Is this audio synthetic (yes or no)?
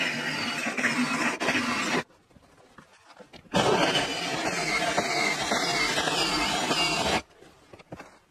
no